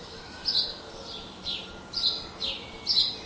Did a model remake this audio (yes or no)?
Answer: no